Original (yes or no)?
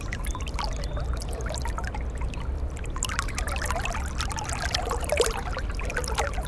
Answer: yes